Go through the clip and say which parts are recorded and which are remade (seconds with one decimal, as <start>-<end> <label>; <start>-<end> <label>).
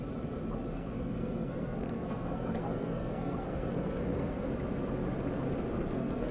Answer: 0.0-0.7 recorded; 0.7-4.5 remade; 4.5-5.7 recorded; 5.7-6.3 remade